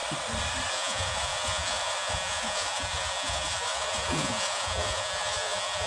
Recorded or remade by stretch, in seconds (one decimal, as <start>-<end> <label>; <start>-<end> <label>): 0.0-0.7 recorded; 0.7-5.9 remade

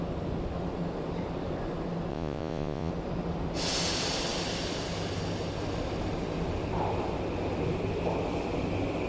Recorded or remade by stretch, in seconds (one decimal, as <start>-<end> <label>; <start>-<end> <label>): 0.0-2.1 recorded; 2.1-2.9 remade; 2.9-9.1 recorded

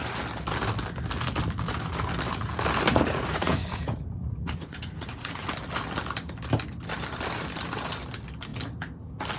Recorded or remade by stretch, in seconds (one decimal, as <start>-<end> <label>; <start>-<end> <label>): 0.0-2.9 recorded; 2.9-5.5 remade; 5.5-9.4 recorded

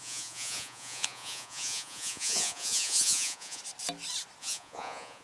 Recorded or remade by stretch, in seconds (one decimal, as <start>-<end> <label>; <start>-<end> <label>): 0.0-3.6 remade; 3.6-4.4 recorded; 4.4-5.2 remade

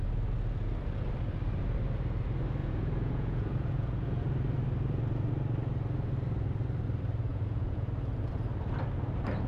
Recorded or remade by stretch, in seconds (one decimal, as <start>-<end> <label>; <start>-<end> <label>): 0.0-2.6 recorded; 2.6-4.3 remade; 4.3-7.3 recorded; 7.3-7.9 remade; 7.9-9.5 recorded

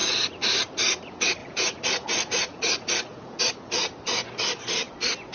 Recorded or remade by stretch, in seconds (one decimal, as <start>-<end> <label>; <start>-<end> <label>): 0.0-1.4 recorded; 1.4-3.4 remade; 3.4-5.3 recorded